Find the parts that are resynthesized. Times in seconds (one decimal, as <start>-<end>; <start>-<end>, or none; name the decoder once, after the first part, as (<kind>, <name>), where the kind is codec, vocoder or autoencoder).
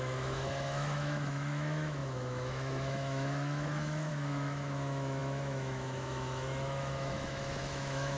0.0-8.2 (autoencoder, DAC-VAE)